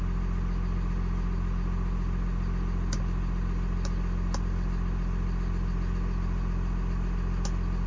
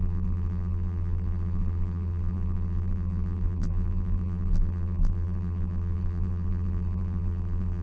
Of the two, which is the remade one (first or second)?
second